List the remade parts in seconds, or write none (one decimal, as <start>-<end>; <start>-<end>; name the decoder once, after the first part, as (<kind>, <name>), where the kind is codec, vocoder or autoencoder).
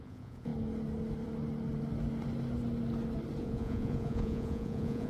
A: 0.0-0.5 (vocoder, Vocos); 3.4-5.1